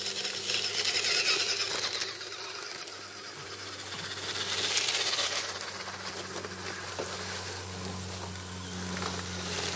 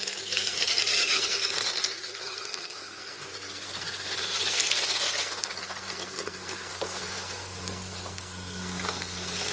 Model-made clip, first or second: second